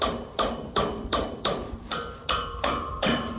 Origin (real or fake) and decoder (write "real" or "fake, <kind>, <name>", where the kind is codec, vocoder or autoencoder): fake, vocoder, BigVGAN v2